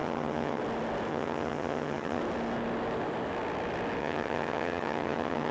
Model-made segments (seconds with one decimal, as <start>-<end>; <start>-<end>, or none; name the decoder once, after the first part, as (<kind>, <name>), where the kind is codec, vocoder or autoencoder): 0.0-0.6 (vocoder, HiFi-GAN); 1.1-2.2; 4.0-5.5